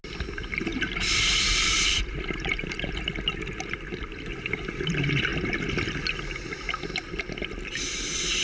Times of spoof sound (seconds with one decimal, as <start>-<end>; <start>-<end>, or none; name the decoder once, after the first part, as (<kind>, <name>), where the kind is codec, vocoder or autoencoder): 0.7-2.9 (vocoder, BigVGAN v2)